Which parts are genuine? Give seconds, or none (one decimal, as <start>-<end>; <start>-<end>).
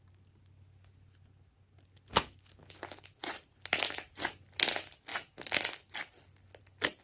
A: 0.0-7.0